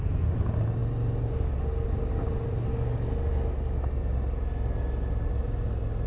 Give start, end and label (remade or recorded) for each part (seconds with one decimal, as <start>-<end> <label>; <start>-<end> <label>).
0.0-6.1 recorded